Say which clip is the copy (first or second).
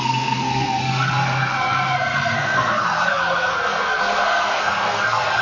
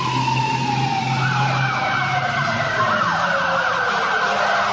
first